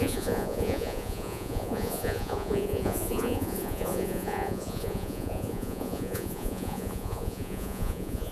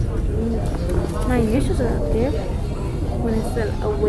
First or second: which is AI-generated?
first